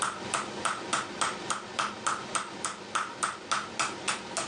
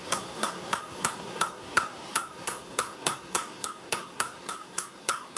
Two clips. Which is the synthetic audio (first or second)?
second